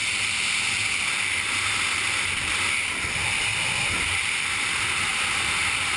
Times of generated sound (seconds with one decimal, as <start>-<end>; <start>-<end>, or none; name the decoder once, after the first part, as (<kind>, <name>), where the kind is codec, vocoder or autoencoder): none